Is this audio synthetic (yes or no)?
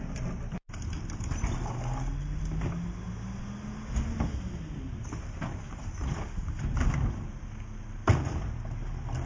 no